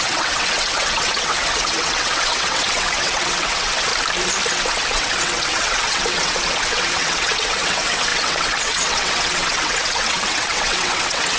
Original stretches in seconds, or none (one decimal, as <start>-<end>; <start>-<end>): 3.9-4.5